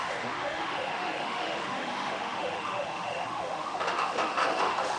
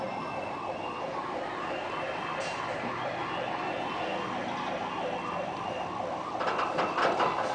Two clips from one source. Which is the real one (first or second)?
second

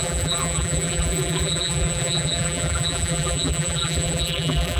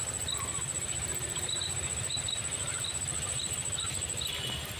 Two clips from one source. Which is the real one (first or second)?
second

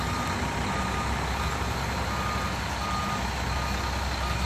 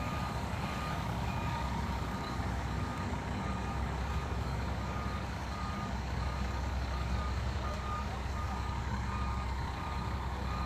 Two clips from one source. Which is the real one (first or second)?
first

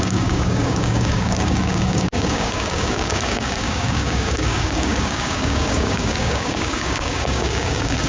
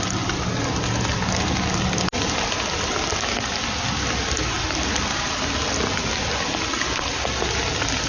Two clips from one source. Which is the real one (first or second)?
second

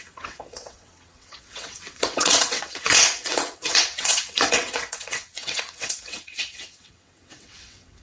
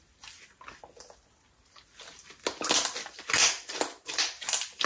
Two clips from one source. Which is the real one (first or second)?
second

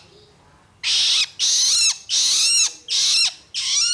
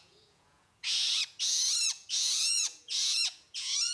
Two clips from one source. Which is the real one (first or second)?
first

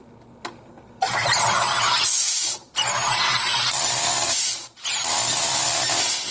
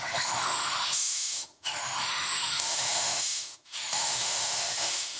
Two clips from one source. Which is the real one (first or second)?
first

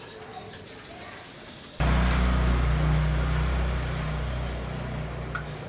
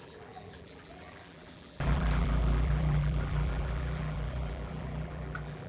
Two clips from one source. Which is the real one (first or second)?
first